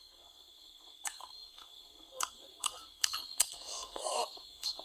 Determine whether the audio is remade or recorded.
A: remade